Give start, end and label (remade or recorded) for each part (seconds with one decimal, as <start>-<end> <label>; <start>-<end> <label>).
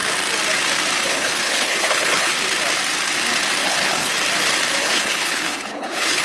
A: 0.0-1.0 recorded; 1.0-2.3 remade; 2.3-3.6 recorded; 3.6-4.1 remade; 4.1-4.8 recorded; 4.8-6.2 remade